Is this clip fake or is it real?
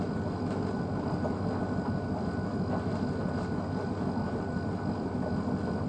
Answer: real